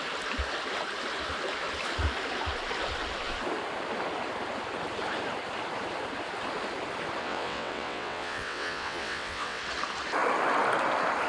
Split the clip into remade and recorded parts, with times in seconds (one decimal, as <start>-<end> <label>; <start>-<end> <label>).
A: 0.0-7.2 recorded; 7.2-9.6 remade; 9.6-11.3 recorded